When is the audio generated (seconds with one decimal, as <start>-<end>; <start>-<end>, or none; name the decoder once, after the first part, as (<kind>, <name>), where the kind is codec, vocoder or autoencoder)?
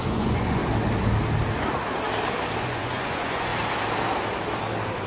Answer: 0.0-0.6 (vocoder, Vocos); 2.6-3.5